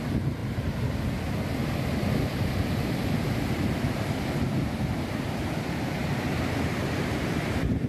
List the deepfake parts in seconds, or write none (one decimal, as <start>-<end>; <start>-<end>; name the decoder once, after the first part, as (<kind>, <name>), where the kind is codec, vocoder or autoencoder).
0.0-0.4 (vocoder, BigVGAN v2); 4.8-7.9